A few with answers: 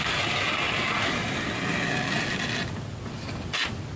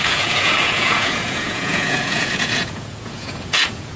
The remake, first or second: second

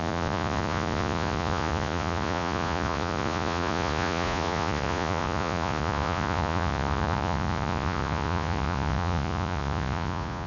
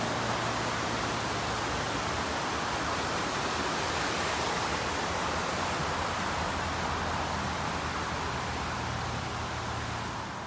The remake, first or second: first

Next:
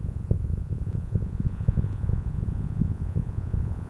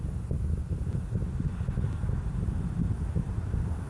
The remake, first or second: first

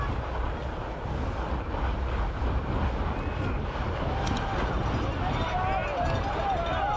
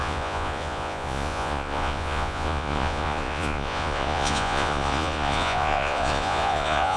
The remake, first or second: second